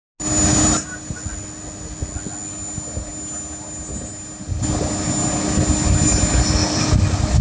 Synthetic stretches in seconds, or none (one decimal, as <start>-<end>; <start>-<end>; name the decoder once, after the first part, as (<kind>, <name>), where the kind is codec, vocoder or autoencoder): none